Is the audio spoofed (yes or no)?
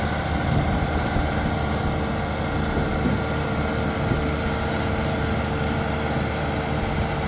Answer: no